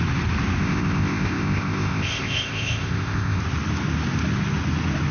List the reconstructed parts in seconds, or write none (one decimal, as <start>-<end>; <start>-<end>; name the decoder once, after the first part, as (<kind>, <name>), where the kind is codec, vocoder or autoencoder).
0.6-3.4 (codec, ZipCodec)